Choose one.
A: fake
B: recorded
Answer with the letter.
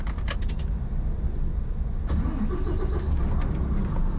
B